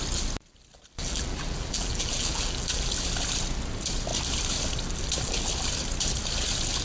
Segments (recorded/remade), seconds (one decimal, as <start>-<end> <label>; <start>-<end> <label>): 0.0-1.0 recorded; 1.0-2.9 remade; 2.9-6.8 recorded